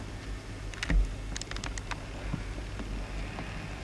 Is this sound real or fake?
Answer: real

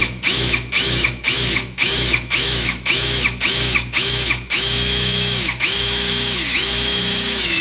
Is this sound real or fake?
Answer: fake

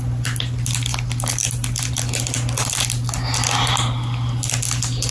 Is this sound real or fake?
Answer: real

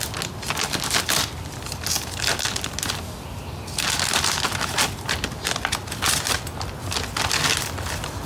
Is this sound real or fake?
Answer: real